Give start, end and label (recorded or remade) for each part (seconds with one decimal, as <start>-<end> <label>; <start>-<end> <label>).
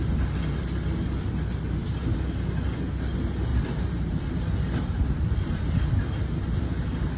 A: 0.0-3.5 recorded; 3.5-4.2 remade; 4.2-7.2 recorded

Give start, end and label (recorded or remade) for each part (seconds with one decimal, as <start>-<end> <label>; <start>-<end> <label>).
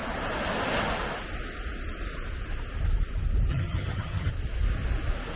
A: 0.0-3.5 recorded; 3.5-4.3 remade; 4.3-5.4 recorded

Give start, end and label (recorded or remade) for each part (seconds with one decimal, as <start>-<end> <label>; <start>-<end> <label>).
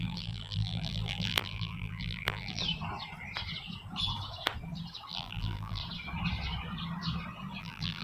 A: 0.0-2.6 remade; 2.6-5.1 recorded; 5.1-5.8 remade; 5.8-7.6 recorded; 7.6-8.0 remade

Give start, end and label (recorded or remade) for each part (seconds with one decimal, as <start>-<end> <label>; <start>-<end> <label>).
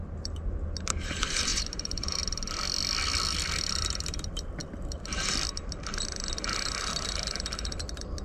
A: 0.0-1.5 recorded; 1.5-2.2 remade; 2.2-8.2 recorded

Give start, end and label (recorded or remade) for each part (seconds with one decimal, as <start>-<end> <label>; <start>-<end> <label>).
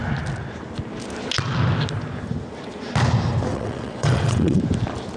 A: 0.0-3.5 recorded; 3.5-4.6 remade; 4.6-5.2 recorded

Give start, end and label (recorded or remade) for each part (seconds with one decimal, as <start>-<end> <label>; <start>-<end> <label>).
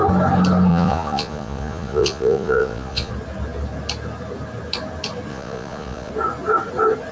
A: 0.0-0.7 recorded; 0.7-3.1 remade; 3.1-5.3 recorded; 5.3-6.1 remade; 6.1-7.1 recorded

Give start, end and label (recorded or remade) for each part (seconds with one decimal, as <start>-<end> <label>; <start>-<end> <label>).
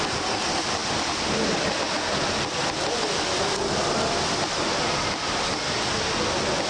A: 0.0-6.7 recorded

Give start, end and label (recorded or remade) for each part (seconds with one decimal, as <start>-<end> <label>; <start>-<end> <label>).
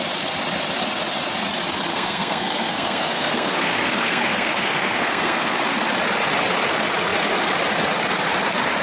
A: 0.0-1.9 recorded; 1.9-5.6 remade; 5.6-8.8 recorded